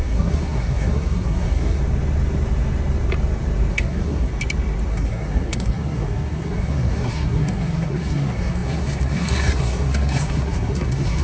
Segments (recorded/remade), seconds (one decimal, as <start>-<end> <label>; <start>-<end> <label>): 0.0-1.8 remade; 1.8-3.7 recorded; 3.7-4.3 remade; 4.3-4.9 recorded; 4.9-11.2 remade